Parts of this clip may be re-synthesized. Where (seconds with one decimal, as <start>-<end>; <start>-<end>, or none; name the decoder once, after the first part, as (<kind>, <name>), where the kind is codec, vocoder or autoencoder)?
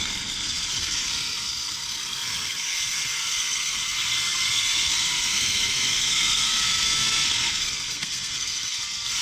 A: 0.0-9.2 (codec, SNAC)